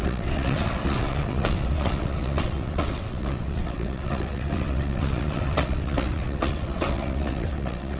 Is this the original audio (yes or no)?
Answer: no